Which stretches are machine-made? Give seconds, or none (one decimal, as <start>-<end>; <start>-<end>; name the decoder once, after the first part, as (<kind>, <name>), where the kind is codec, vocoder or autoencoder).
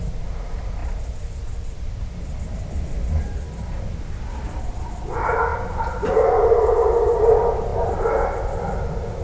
none